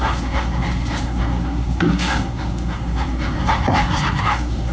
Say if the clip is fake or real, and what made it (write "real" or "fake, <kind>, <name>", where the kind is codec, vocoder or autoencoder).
fake, codec, SNAC